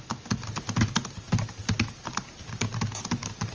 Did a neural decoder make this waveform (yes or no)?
no